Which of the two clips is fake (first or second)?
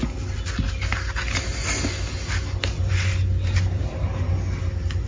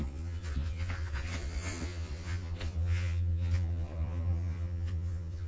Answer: second